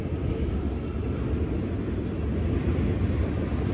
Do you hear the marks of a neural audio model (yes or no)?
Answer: no